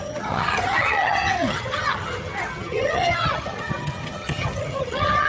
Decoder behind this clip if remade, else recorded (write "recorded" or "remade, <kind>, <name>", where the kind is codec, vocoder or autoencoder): remade, vocoder, HiFi-GAN